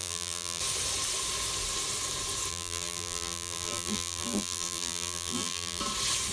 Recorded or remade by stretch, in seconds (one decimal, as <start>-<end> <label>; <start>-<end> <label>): 0.0-0.6 remade; 0.6-2.5 recorded; 2.5-5.8 remade; 5.8-6.3 recorded